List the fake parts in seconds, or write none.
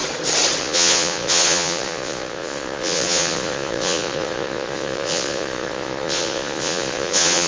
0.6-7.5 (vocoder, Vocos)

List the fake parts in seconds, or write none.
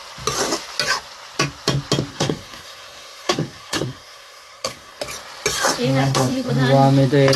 2.1-5.0 (codec, SNAC); 6.0-6.5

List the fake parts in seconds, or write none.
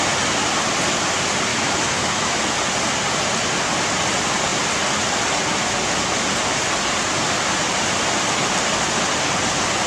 1.5-2.4 (autoencoder, DAC-VAE)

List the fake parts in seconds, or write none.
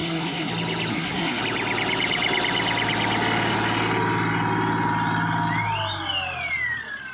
0.0-0.5 (codec, SNAC); 0.9-1.4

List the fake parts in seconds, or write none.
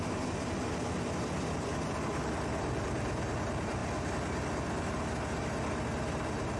none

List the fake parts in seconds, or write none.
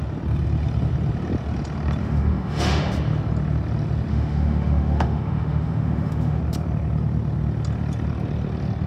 2.0-2.8 (autoencoder, DAC-VAE); 4.1-6.4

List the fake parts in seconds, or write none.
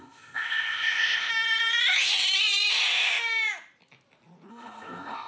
0.0-1.3 (codec, ZipCodec); 4.5-5.3